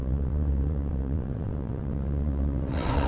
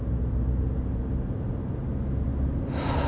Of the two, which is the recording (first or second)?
second